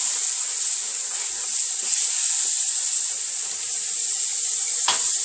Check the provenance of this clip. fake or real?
real